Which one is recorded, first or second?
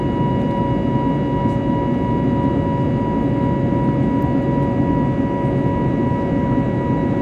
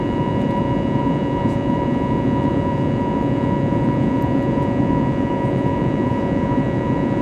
first